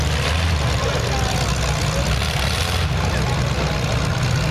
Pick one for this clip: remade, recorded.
recorded